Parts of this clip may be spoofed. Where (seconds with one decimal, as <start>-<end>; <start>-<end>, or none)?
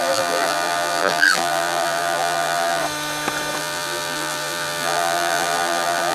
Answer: 0.0-2.8; 3.6-6.1